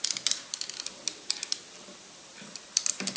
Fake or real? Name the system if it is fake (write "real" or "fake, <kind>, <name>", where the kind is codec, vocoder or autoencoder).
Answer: real